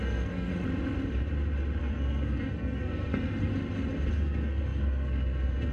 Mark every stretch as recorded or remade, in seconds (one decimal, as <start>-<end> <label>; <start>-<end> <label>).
0.0-0.5 remade; 0.5-1.8 recorded; 1.8-3.5 remade; 3.5-4.1 recorded; 4.1-5.7 remade